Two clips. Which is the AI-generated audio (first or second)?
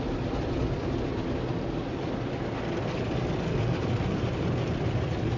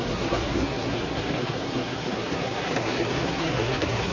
second